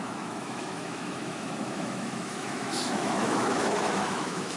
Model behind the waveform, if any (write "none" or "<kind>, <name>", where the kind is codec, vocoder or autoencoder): autoencoder, DAC-VAE